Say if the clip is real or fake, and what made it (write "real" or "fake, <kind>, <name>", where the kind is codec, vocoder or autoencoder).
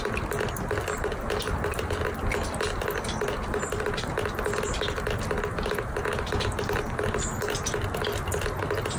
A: real